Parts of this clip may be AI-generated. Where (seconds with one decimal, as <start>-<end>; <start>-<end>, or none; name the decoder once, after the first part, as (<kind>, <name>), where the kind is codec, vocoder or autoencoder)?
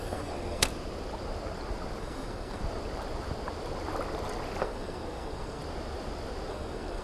0.0-0.7 (codec, SNAC); 2.0-2.6; 4.6-5.6; 6.5-7.0